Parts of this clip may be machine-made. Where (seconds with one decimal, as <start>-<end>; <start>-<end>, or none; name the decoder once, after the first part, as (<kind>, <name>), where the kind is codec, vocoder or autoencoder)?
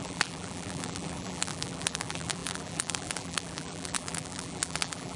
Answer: 0.0-5.2 (vocoder, BigVGAN v2)